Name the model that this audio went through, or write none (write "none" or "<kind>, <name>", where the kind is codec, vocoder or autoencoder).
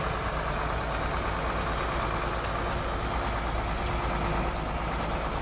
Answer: none